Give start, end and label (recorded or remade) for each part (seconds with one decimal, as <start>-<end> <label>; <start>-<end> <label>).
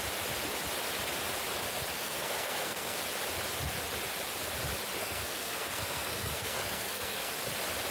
0.0-1.9 recorded; 1.9-3.0 remade; 3.0-5.0 recorded; 5.0-7.3 remade; 7.3-7.9 recorded